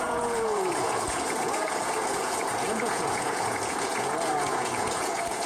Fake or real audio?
fake